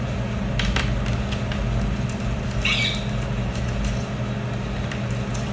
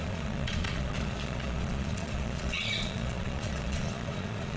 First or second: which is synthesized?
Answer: second